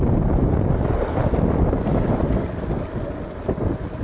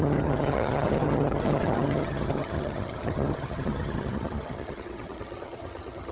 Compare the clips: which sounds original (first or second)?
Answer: first